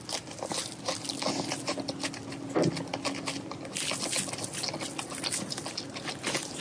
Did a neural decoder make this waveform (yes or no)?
no